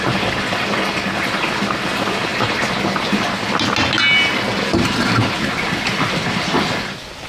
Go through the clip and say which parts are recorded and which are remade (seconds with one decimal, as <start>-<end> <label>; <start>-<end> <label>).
0.0-7.3 recorded